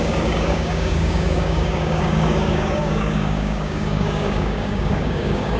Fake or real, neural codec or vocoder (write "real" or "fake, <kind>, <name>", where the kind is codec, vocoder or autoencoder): fake, codec, DAC